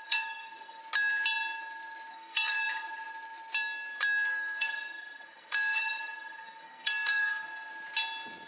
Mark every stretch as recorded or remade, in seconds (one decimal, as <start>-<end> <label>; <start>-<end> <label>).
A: 0.0-0.8 remade; 0.8-2.1 recorded; 2.1-2.6 remade; 2.6-4.3 recorded; 4.3-7.7 remade; 7.7-8.5 recorded